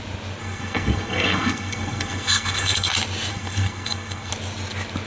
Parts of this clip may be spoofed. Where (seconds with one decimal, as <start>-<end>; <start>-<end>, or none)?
0.4-2.9; 3.3-4.3